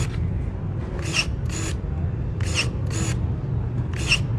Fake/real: real